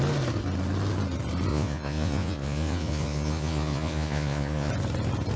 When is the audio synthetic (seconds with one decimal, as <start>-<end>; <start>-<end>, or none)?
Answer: 1.5-4.7